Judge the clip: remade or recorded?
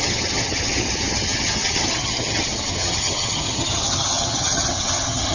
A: remade